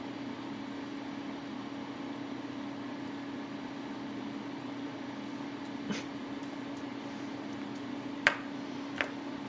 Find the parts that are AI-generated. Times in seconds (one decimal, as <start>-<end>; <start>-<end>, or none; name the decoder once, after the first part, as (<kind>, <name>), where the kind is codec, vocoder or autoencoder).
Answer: none